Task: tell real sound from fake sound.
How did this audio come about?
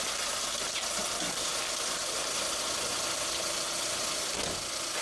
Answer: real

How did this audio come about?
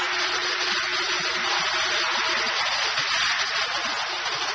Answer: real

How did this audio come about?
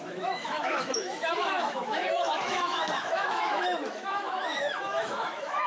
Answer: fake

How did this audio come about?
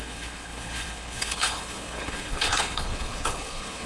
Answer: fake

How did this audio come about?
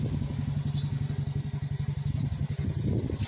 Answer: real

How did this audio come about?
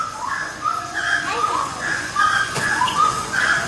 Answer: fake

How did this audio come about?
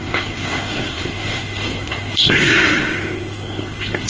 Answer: fake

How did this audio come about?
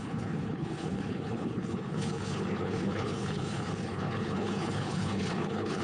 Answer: fake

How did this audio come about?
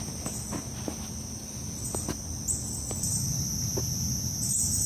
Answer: real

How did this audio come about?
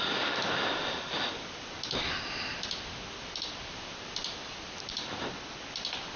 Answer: real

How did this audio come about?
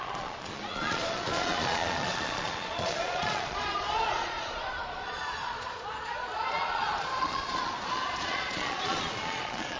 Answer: fake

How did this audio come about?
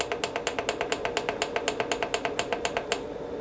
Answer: real